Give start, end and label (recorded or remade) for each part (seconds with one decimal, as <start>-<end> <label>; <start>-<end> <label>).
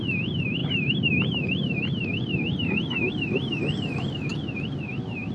0.0-5.3 recorded